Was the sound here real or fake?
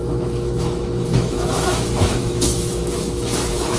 fake